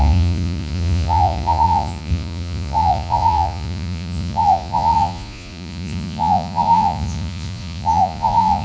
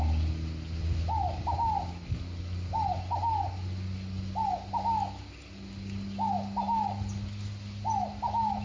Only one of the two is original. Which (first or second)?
second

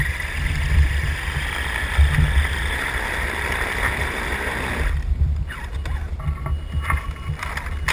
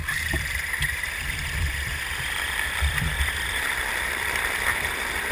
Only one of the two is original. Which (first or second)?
first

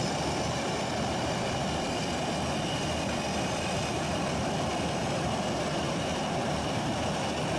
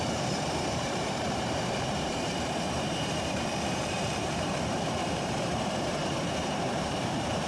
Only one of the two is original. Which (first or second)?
first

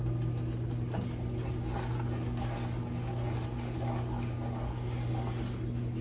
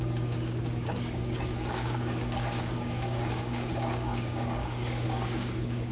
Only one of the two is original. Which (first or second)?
first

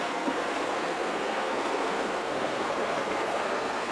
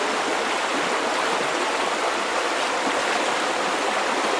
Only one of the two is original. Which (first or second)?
second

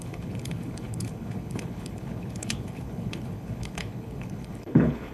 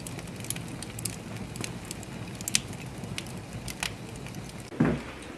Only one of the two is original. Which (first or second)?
second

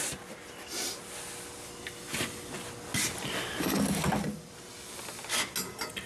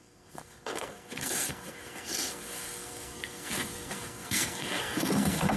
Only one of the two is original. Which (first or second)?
first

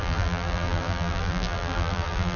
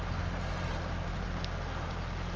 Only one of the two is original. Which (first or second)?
second